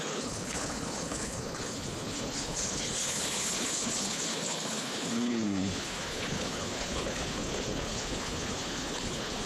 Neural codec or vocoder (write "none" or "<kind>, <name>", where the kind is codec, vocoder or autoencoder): codec, HILCodec